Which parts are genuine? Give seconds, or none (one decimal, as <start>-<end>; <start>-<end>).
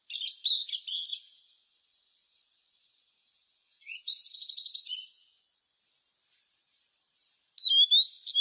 0.0-1.1; 5.8-8.4